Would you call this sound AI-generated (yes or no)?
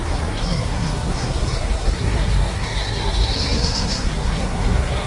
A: yes